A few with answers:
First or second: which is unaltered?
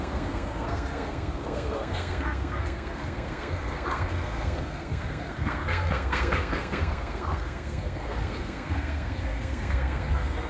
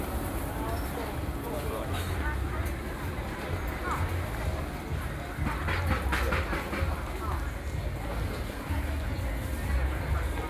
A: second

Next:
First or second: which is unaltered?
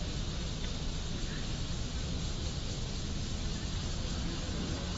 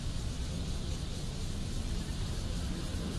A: first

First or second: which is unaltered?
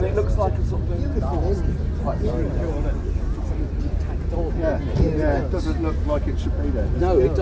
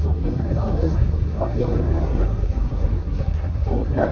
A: first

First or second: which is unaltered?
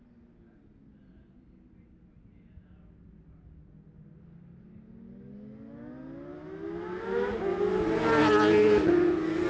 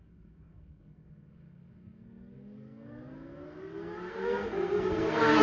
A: first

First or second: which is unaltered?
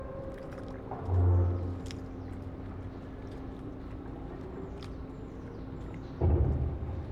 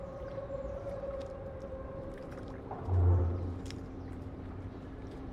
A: first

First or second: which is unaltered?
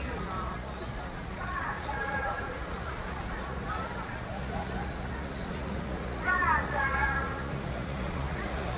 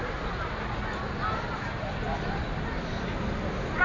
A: second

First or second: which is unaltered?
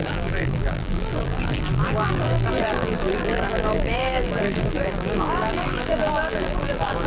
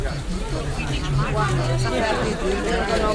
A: second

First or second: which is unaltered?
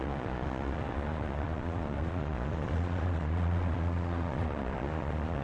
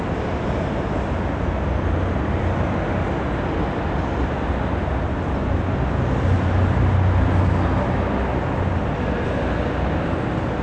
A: second